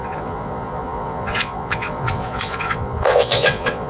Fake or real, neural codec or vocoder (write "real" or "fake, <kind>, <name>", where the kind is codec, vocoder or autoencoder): fake, vocoder, Vocos